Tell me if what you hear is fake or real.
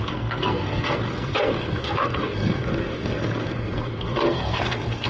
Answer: fake